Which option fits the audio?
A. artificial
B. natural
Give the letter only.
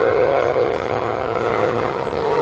A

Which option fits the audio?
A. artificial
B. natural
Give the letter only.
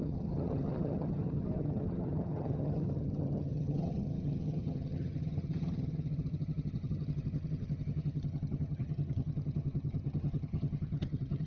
A